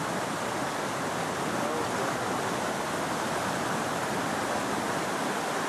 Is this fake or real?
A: real